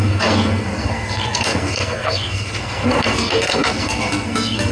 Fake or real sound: fake